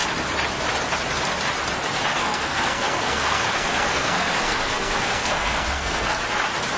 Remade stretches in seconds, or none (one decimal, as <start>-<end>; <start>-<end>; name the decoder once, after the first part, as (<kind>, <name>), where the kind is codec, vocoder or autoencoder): 2.1-6.2 (codec, SNAC)